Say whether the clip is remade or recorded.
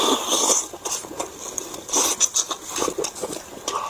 recorded